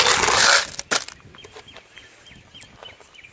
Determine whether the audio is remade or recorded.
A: recorded